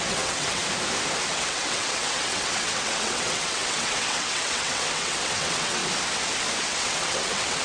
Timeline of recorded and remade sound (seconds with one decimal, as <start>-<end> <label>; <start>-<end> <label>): 0.0-0.6 remade; 0.6-1.3 recorded; 1.3-5.8 remade; 5.8-6.6 recorded; 6.6-7.6 remade